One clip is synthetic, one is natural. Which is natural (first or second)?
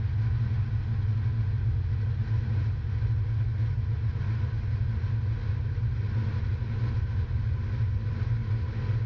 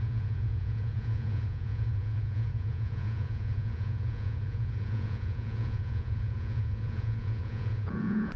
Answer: first